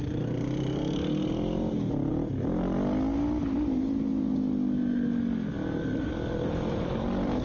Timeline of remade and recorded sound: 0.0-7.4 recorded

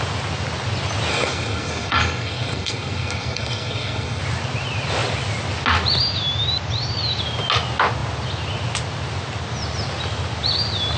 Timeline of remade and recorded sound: 0.0-1.1 recorded; 1.1-4.2 remade; 4.2-11.0 recorded

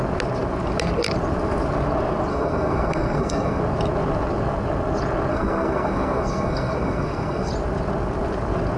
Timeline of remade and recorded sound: 0.0-2.3 recorded; 2.3-3.6 remade; 3.6-5.3 recorded; 5.3-7.5 remade; 7.5-8.8 recorded

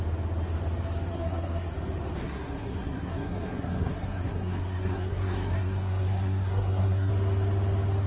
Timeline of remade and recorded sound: 0.0-1.1 recorded; 1.1-1.7 remade; 1.7-2.2 recorded; 2.2-7.1 remade; 7.1-8.1 recorded

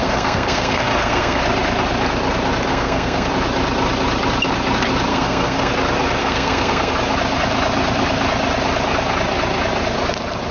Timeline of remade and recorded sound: 0.0-1.4 remade; 1.4-2.7 recorded; 2.7-3.3 remade; 3.3-5.1 recorded; 5.1-5.7 remade; 5.7-6.2 recorded; 6.2-6.9 remade; 6.9-10.5 recorded

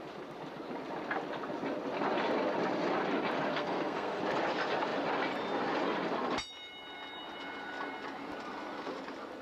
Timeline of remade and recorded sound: 0.0-3.5 recorded; 3.5-4.2 remade; 4.2-9.4 recorded